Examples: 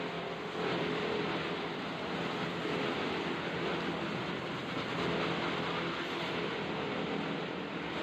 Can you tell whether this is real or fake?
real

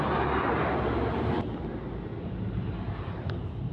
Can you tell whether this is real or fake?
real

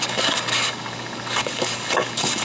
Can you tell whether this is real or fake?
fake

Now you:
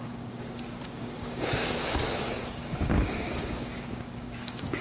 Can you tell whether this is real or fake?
fake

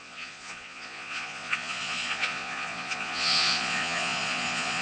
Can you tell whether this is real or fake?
fake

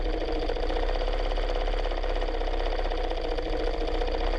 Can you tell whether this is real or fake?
real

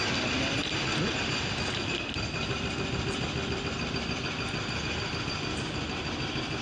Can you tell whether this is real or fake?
real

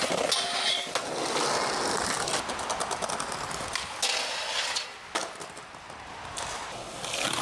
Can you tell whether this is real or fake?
real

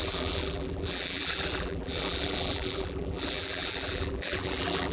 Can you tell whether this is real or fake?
fake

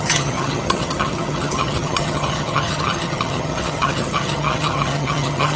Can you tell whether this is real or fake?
fake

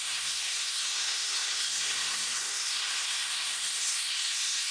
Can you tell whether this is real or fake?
fake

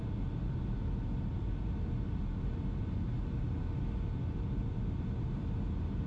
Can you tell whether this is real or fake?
real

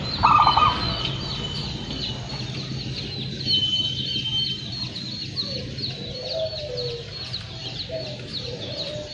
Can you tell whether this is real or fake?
real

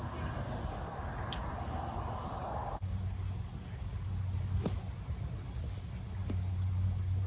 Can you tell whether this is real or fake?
real